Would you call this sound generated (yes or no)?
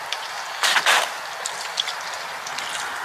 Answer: no